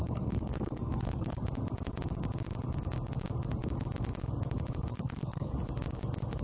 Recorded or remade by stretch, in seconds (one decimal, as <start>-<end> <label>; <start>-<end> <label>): 0.0-1.4 remade; 1.4-4.9 recorded; 4.9-5.5 remade; 5.5-6.4 recorded